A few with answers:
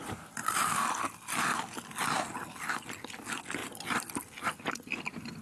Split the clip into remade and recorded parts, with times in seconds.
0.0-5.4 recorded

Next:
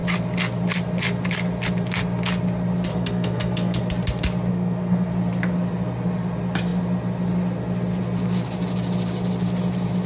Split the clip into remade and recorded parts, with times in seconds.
0.0-2.9 recorded; 2.9-3.8 remade; 3.8-4.5 recorded; 4.5-5.1 remade; 5.1-10.1 recorded

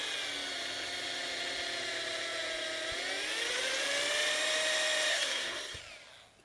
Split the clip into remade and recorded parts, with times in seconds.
0.0-5.1 recorded; 5.1-5.8 remade; 5.8-6.4 recorded

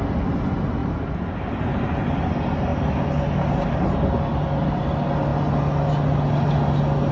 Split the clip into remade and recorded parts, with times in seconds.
0.0-0.8 recorded; 0.8-2.3 remade; 2.3-7.1 recorded

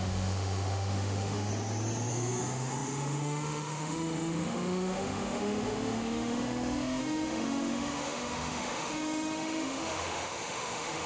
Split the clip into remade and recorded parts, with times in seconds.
0.0-1.5 remade; 1.5-2.1 recorded; 2.1-11.1 remade